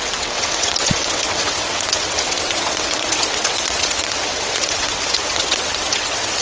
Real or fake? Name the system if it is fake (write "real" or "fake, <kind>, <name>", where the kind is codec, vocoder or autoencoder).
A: fake, vocoder, WaveNeXt